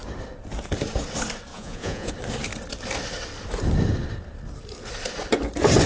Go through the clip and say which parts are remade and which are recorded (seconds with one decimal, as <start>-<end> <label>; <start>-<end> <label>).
0.0-1.5 recorded; 1.5-2.1 remade; 2.1-5.9 recorded